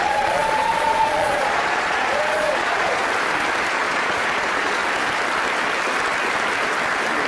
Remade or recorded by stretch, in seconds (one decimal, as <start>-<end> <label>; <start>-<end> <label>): 0.0-3.0 remade; 3.0-3.7 recorded; 3.7-4.8 remade; 4.8-7.3 recorded